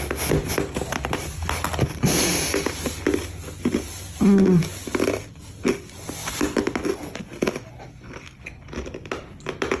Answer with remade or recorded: recorded